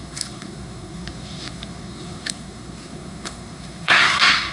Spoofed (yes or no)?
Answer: yes